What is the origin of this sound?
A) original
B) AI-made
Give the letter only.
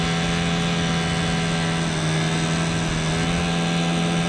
A